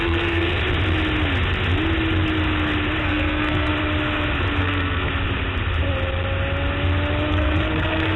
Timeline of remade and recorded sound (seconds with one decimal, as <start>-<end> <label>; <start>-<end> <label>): 0.0-0.6 remade; 0.6-3.0 recorded; 3.0-3.7 remade; 3.7-4.6 recorded; 4.6-5.1 remade; 5.1-7.3 recorded; 7.3-8.2 remade